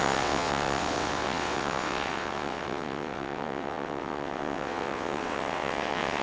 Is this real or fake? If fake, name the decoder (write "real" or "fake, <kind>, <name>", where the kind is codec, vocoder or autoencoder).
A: fake, vocoder, WaveNeXt